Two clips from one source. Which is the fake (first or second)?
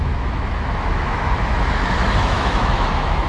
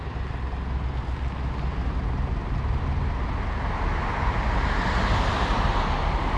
first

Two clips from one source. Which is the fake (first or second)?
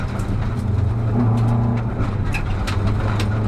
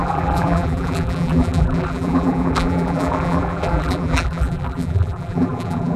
second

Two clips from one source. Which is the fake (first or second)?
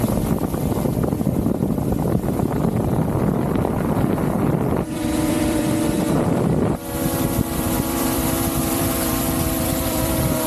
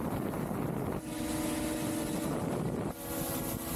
first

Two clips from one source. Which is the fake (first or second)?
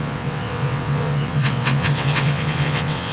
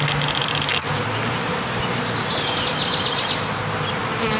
first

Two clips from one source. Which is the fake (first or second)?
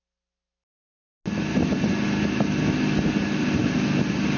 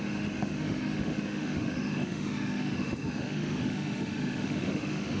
second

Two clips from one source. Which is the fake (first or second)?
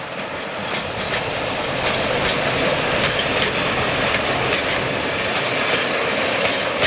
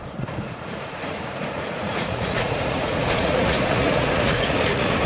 second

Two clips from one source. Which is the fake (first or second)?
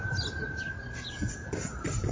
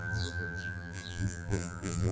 second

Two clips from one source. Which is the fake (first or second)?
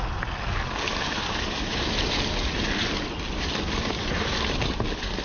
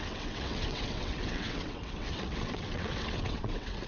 second